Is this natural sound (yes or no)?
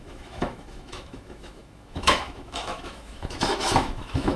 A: no